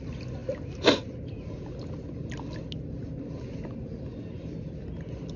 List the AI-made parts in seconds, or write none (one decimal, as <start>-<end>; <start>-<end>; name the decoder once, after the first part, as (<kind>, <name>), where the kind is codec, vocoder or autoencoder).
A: none